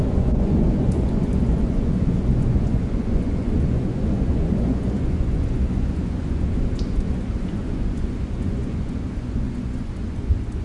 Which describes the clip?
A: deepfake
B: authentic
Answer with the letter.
A